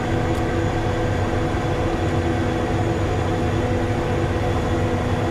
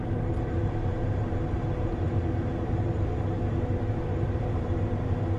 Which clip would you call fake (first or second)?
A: second